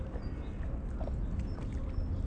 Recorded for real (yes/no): yes